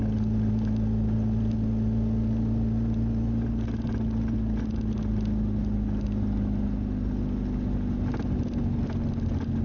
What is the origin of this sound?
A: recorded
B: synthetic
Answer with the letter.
A